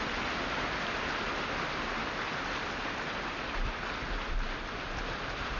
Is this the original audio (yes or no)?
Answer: yes